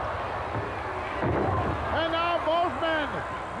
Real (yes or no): yes